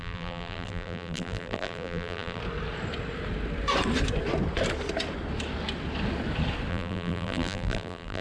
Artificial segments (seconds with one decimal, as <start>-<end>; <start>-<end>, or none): 0.0-2.4; 6.7-8.2